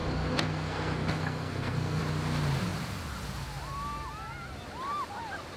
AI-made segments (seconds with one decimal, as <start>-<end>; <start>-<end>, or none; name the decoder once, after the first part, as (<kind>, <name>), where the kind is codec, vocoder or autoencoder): 0.0-2.0 (codec, SNAC)